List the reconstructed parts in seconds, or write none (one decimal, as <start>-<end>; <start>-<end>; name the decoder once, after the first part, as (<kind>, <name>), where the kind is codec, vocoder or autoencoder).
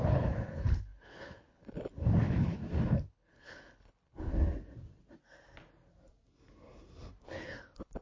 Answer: 0.0-2.6 (codec, HILCodec); 3.1-4.3; 7.2-8.0